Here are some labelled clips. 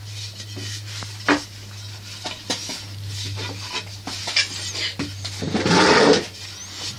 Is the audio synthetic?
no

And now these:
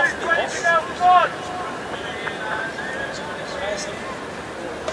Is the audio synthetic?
no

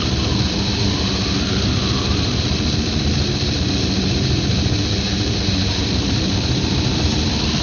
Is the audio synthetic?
yes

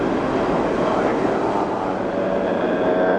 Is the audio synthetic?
no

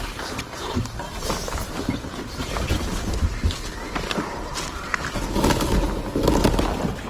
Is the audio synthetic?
no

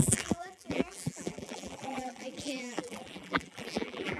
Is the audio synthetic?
yes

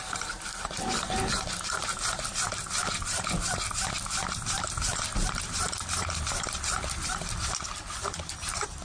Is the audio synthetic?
no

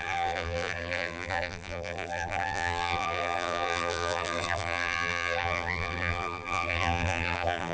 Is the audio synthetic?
yes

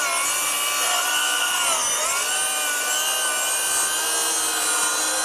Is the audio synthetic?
no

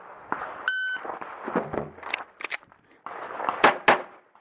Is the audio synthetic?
no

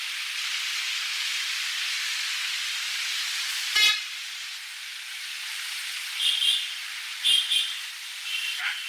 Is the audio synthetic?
no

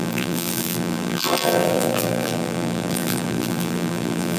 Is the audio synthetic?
yes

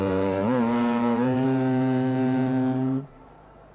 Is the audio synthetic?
yes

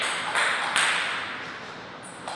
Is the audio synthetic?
no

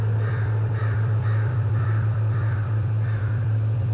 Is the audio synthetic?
yes